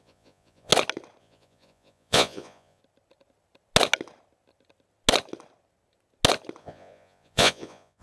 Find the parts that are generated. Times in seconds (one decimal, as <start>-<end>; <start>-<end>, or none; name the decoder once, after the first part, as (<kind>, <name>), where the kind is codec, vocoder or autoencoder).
0.0-0.7 (vocoder, Vocos); 1.2-2.8; 6.6-8.0